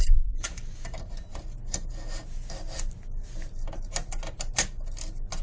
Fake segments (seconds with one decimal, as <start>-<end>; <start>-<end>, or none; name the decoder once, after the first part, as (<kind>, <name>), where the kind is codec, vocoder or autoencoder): none